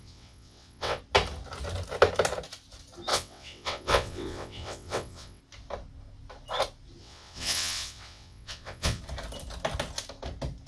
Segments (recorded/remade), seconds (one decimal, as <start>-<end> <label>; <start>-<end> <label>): 0.0-1.0 remade; 1.0-3.1 recorded; 3.1-5.4 remade; 5.4-7.0 recorded; 7.0-9.0 remade; 9.0-10.7 recorded